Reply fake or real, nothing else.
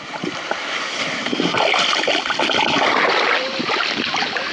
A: real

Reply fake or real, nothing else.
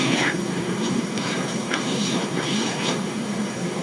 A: fake